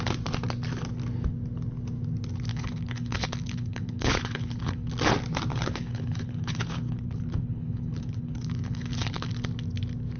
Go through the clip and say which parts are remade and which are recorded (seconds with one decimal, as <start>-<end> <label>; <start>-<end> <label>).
0.0-2.5 recorded; 2.5-4.9 remade; 4.9-5.5 recorded; 5.5-9.3 remade; 9.3-10.2 recorded